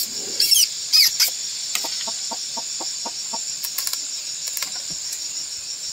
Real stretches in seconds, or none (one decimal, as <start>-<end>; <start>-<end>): 0.0-1.5; 2.0-5.9